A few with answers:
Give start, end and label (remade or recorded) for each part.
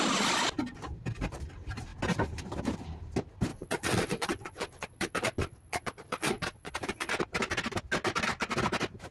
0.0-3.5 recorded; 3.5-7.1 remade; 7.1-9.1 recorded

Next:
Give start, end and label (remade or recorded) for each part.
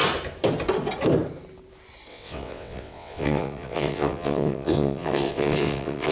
0.0-2.1 recorded; 2.1-6.1 remade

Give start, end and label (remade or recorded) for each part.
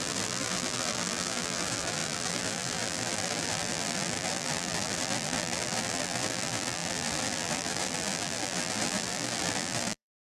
0.0-10.3 remade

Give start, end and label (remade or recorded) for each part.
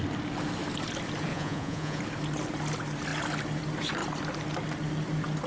0.0-1.3 recorded; 1.3-2.0 remade; 2.0-5.5 recorded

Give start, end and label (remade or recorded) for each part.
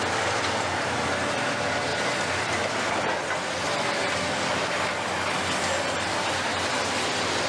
0.0-7.5 recorded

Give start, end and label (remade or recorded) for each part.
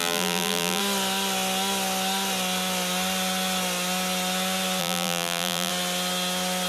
0.0-0.8 remade; 0.8-4.8 recorded; 4.8-5.7 remade; 5.7-6.7 recorded